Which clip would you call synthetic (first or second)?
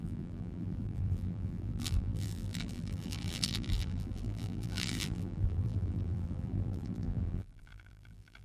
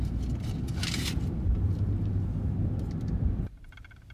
first